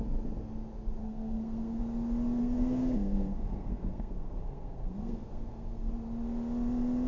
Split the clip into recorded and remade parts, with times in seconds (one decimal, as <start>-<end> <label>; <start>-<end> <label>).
0.0-1.0 recorded; 1.0-1.8 remade; 1.8-2.4 recorded; 2.4-5.9 remade; 5.9-7.1 recorded